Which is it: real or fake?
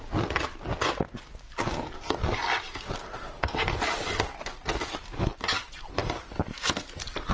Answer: real